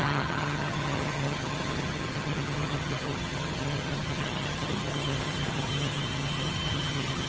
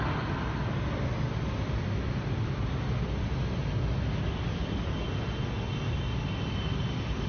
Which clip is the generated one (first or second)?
first